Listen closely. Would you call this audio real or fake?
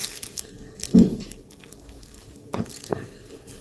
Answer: fake